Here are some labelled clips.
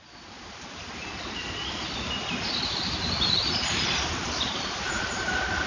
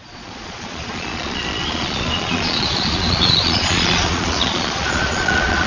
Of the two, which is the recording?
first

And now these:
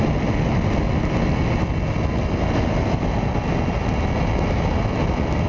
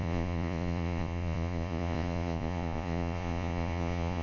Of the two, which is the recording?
first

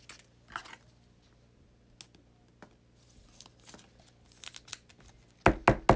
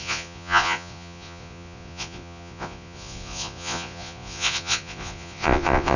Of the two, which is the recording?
first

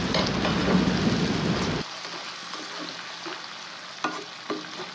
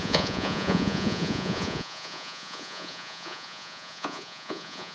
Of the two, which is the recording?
first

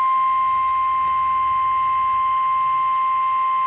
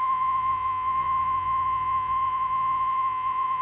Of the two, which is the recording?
first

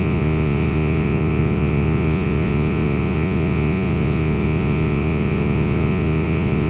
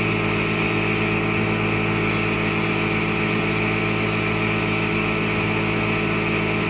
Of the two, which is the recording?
second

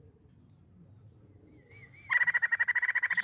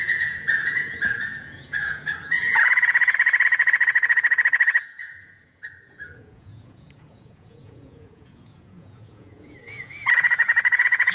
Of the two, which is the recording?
first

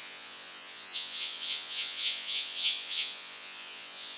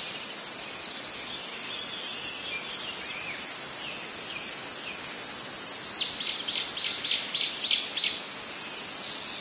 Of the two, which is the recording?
second